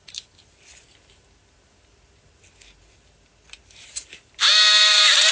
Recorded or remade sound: recorded